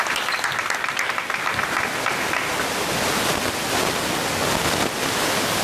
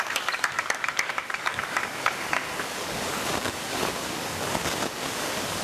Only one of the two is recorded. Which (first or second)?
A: first